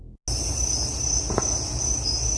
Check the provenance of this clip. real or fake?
real